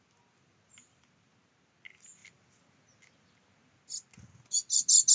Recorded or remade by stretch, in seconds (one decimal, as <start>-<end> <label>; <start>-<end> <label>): 0.0-5.1 recorded